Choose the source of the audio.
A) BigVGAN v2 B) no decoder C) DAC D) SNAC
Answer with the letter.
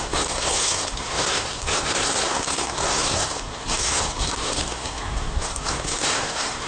D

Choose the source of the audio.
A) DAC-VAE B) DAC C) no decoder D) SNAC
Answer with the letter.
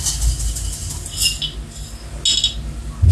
C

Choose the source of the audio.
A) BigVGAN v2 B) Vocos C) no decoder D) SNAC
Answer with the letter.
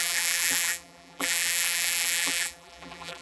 A